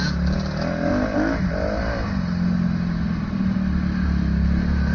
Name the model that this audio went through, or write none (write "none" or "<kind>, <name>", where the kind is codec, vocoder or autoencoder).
none